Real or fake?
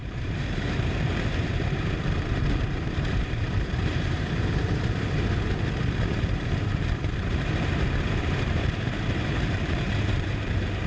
fake